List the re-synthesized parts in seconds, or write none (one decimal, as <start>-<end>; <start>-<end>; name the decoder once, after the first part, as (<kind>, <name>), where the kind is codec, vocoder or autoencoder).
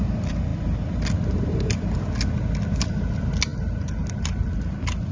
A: none